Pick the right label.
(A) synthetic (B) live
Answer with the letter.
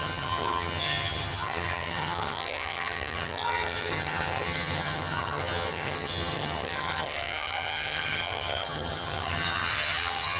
A